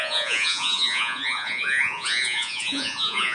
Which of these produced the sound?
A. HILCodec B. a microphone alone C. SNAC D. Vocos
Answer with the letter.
D